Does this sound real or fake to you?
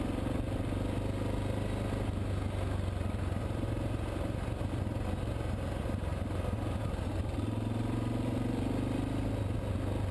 real